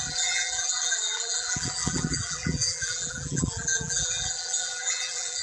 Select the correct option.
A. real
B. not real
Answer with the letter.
B